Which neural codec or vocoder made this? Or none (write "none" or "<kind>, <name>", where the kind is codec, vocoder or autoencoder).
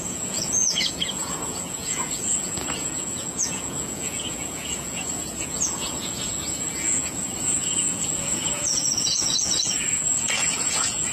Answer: vocoder, Vocos